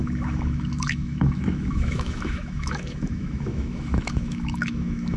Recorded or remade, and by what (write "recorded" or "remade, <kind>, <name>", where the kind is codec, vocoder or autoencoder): remade, autoencoder, DAC-VAE